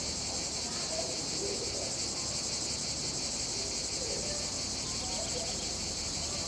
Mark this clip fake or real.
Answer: real